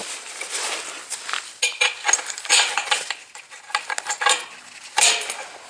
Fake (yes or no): no